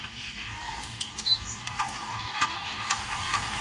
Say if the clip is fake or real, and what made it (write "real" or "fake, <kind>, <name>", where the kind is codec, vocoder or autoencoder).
fake, codec, DAC